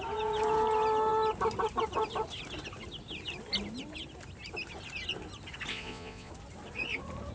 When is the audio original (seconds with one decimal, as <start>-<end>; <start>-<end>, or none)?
0.0-5.7; 6.3-7.3